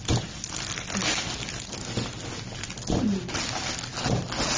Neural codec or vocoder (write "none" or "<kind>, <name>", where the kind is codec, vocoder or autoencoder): none